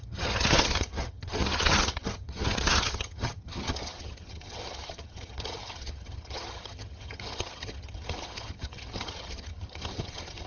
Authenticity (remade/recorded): remade